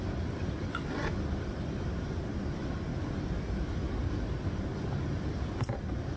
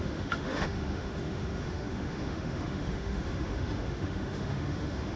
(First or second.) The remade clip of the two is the second